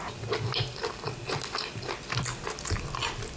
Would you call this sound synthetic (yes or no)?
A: no